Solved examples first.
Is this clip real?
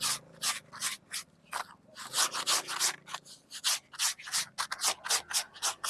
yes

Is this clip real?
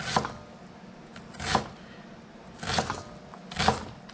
yes